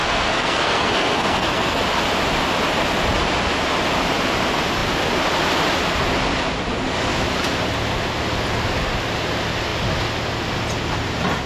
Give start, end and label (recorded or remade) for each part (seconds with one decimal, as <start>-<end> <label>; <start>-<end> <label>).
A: 0.0-1.8 remade; 1.8-11.5 recorded